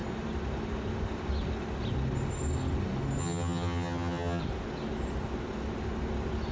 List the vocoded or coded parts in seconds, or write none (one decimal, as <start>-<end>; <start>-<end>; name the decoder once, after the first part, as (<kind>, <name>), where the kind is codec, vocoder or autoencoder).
3.2-4.4 (vocoder, HiFi-GAN)